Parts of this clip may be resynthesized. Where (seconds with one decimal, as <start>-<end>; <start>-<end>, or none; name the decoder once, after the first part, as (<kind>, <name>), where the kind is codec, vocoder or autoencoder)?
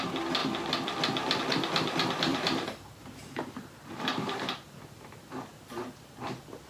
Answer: 2.3-6.3 (vocoder, BigVGAN v2)